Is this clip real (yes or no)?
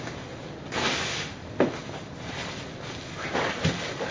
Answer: yes